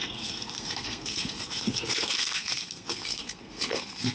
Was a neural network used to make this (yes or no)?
yes